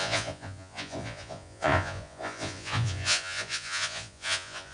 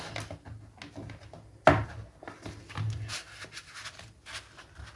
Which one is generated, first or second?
first